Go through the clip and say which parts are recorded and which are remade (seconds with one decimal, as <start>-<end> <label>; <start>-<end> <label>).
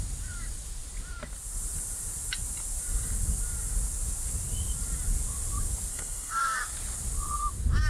0.0-5.9 recorded; 5.9-6.6 remade; 6.6-7.9 recorded